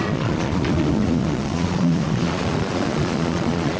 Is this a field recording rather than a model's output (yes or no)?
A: no